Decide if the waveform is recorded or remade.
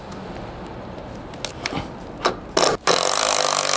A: recorded